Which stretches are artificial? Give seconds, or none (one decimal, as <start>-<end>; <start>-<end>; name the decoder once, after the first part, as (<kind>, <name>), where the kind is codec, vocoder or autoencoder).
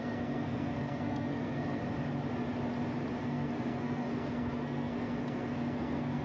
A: 0.0-1.8 (codec, SNAC); 3.2-6.2